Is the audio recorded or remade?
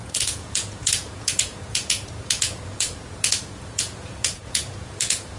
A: remade